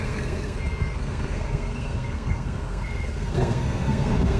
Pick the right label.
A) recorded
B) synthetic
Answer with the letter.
B